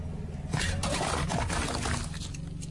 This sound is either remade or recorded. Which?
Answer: recorded